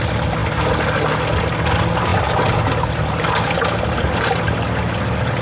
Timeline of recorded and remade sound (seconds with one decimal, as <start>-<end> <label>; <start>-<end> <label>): 0.0-5.4 recorded